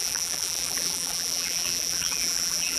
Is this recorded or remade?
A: remade